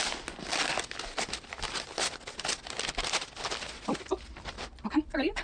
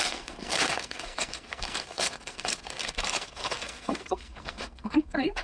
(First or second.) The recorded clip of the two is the first